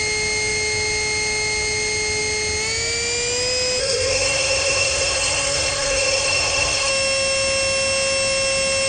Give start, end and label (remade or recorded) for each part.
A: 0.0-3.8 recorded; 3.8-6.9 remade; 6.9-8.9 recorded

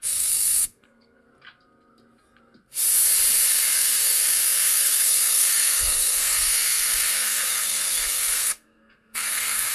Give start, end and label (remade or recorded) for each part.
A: 0.0-1.3 remade; 1.3-3.5 recorded; 3.5-9.7 remade

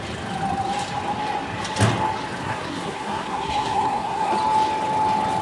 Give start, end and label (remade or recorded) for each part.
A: 0.0-2.4 recorded; 2.4-4.3 remade; 4.3-5.4 recorded

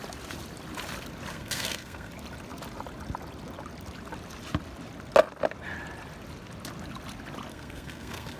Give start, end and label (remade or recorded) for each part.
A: 0.0-1.3 recorded; 1.3-2.1 remade; 2.1-7.5 recorded; 7.5-8.4 remade

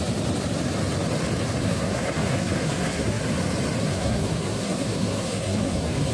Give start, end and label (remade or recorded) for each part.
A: 0.0-1.6 recorded; 1.6-3.2 remade; 3.2-3.8 recorded; 3.8-6.1 remade